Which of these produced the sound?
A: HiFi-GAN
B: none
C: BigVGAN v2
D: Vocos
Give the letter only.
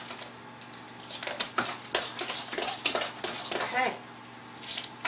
B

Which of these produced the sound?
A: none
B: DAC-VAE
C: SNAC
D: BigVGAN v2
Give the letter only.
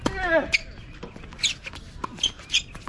A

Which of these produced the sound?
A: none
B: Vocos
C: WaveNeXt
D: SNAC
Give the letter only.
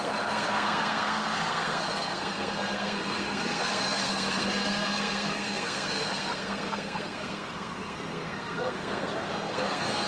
D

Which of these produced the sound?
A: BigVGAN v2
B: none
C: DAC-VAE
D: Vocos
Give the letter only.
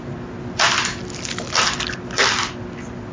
B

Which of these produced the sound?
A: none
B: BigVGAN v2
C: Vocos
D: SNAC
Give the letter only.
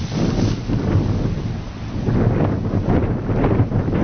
A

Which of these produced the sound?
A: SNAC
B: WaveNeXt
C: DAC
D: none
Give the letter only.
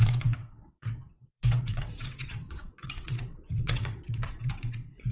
B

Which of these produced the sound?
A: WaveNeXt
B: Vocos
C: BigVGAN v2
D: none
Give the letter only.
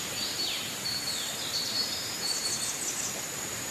C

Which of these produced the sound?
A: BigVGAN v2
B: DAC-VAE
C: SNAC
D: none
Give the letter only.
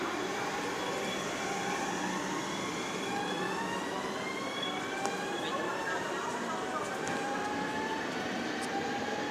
D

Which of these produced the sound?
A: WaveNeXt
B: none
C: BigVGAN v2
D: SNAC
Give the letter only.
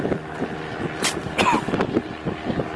B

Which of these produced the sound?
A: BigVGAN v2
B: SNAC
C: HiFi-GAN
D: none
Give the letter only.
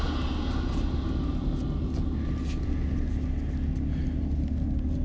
D